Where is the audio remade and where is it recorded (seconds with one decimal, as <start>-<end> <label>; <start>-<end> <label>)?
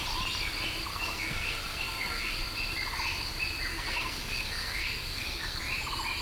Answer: 0.0-0.9 recorded; 0.9-2.3 remade; 2.3-3.7 recorded; 3.7-5.6 remade; 5.6-6.2 recorded